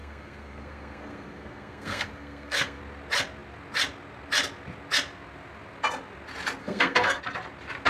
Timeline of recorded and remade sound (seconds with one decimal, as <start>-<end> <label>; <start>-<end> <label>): 0.0-2.8 remade; 2.8-6.6 recorded; 6.6-7.2 remade; 7.2-7.9 recorded

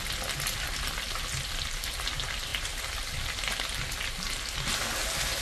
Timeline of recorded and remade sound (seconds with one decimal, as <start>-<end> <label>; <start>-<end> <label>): 0.0-5.4 recorded

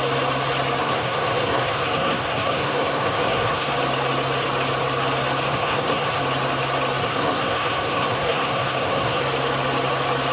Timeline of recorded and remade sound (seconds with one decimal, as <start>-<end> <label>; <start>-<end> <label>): 0.0-0.8 recorded; 0.8-3.7 remade; 3.7-5.5 recorded; 5.5-6.2 remade; 6.2-7.0 recorded; 7.0-9.2 remade; 9.2-10.3 recorded